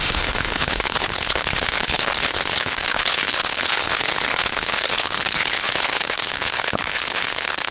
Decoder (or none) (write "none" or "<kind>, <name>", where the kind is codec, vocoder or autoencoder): codec, HILCodec